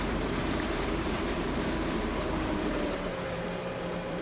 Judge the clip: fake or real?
fake